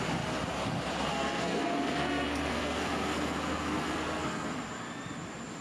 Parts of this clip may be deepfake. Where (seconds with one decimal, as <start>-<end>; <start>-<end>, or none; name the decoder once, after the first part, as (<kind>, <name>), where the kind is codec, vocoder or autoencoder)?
1.1-4.5 (codec, SNAC)